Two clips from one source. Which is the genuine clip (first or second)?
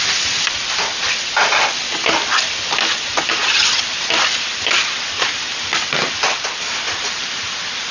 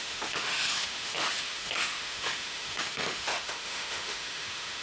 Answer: first